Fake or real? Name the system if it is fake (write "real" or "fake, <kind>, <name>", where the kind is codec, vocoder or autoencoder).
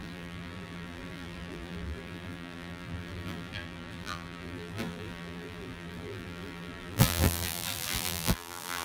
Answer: fake, vocoder, BigVGAN v2